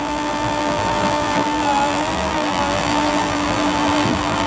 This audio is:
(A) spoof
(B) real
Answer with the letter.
A